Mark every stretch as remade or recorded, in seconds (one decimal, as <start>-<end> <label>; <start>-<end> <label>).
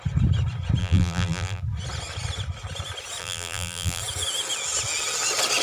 0.0-0.8 recorded; 0.8-1.6 remade; 1.6-3.2 recorded; 3.2-4.0 remade; 4.0-5.6 recorded